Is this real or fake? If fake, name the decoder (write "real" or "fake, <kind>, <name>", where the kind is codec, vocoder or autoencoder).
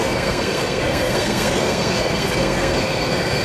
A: fake, codec, SNAC